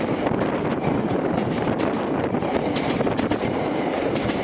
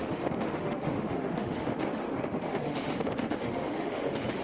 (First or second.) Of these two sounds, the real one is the first